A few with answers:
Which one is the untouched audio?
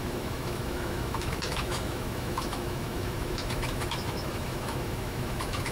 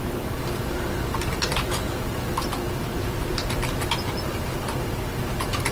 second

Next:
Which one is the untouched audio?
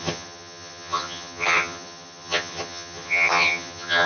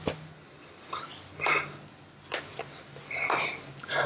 second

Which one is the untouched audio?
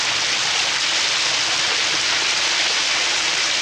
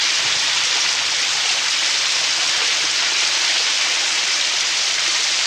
first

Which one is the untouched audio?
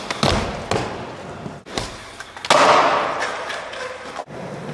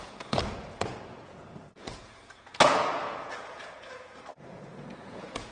first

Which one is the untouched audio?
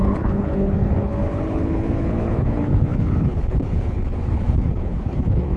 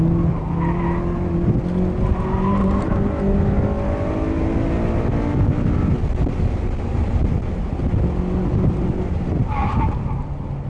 second